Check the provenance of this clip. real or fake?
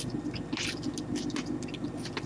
real